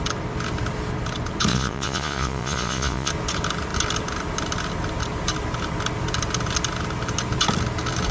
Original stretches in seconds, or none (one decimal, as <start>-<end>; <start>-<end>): 0.0-1.5; 3.1-8.1